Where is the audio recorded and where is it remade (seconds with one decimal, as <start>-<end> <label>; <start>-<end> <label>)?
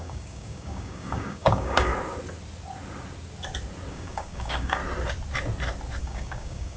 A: 0.0-1.9 remade; 1.9-3.9 recorded; 3.9-4.8 remade; 4.8-6.0 recorded; 6.0-6.8 remade